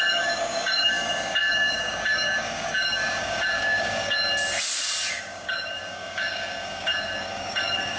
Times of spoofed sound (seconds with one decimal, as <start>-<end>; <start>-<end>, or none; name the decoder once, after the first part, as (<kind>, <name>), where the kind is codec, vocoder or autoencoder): 0.0-4.2 (codec, DAC); 5.1-8.0